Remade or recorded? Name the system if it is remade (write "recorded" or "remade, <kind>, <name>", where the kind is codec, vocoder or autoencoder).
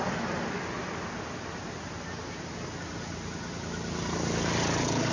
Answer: recorded